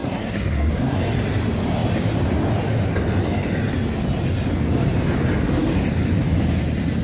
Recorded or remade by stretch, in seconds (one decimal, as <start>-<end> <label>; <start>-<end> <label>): 0.0-1.0 remade; 1.0-7.0 recorded